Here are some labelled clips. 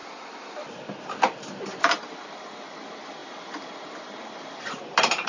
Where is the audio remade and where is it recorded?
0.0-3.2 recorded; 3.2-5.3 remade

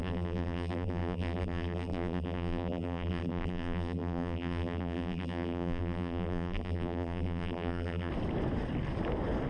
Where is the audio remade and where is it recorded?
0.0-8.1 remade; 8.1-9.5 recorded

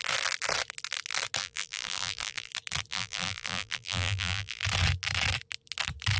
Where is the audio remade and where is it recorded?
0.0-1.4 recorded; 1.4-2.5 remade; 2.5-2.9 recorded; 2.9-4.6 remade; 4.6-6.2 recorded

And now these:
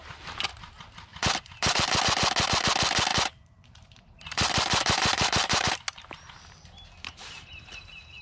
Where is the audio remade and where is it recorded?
0.0-1.1 recorded; 1.1-2.0 remade; 2.0-3.1 recorded; 3.1-5.7 remade; 5.7-8.2 recorded

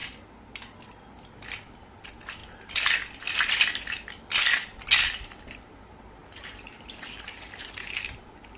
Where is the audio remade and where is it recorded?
0.0-6.2 recorded; 6.2-8.0 remade; 8.0-8.6 recorded

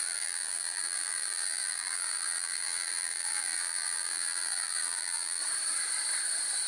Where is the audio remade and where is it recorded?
0.0-5.4 remade; 5.4-6.7 recorded

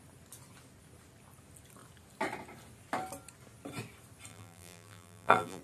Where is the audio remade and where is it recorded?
0.0-4.3 recorded; 4.3-5.6 remade